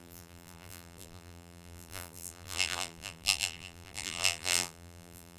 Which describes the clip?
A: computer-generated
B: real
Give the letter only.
A